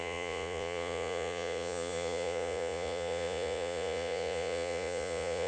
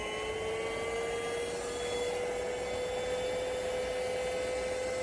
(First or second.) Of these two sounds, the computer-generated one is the first